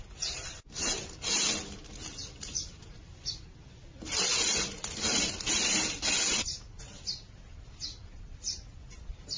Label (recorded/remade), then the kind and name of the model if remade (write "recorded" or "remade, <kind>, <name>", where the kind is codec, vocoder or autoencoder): recorded